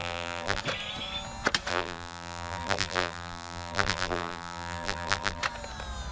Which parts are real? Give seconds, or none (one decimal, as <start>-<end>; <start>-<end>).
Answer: 0.6-1.7; 5.4-6.1